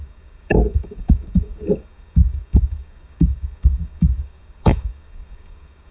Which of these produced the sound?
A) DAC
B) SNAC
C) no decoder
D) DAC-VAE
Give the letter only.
A